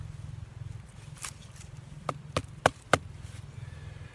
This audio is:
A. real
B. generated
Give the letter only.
A